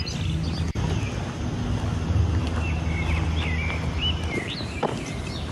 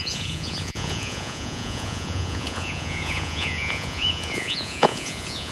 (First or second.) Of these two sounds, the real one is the first